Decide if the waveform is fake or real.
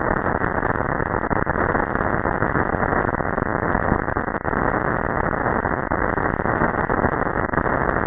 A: real